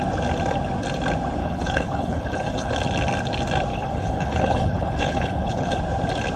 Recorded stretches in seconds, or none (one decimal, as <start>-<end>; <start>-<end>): 0.0-1.4; 2.7-3.7; 5.8-6.4

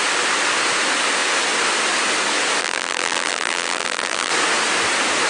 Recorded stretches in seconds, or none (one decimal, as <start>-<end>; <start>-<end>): 0.0-2.6; 4.3-5.3

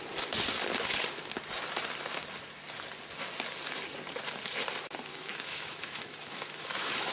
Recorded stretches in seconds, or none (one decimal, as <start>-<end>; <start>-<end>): 0.0-5.1